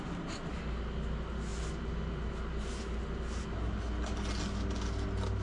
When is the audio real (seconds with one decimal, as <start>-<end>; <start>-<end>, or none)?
0.0-5.4